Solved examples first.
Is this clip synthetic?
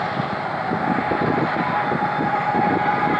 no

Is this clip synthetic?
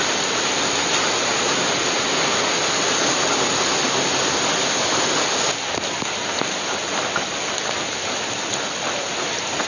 no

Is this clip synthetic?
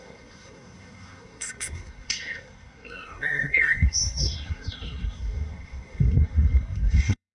yes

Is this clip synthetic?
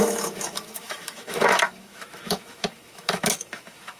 yes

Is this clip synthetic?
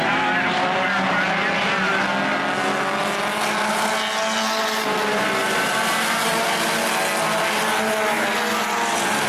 no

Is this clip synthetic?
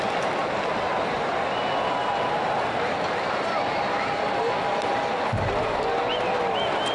no